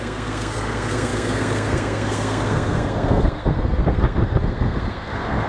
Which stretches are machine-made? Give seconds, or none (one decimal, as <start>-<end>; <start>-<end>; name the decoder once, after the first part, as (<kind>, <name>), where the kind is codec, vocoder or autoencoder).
0.0-5.5 (codec, SNAC)